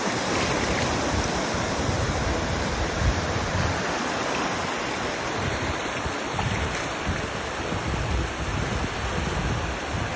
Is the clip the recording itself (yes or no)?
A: no